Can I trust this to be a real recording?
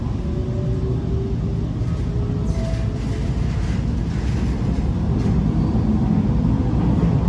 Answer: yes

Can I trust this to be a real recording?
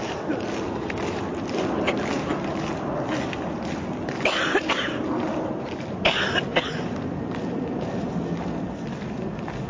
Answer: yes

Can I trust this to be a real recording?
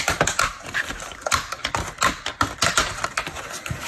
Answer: yes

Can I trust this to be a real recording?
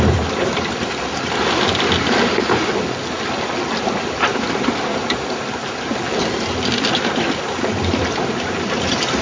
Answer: yes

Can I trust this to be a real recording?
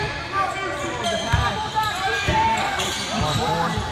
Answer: yes